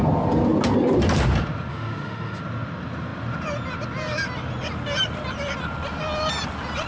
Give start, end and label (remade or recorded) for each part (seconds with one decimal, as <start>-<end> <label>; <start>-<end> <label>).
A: 0.0-1.7 recorded; 1.7-2.4 remade; 2.4-6.9 recorded